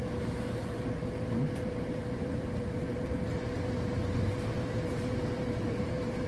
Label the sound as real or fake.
fake